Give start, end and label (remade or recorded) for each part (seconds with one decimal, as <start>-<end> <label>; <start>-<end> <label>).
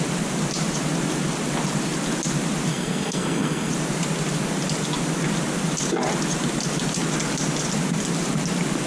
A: 0.0-2.7 recorded; 2.7-3.7 remade; 3.7-8.9 recorded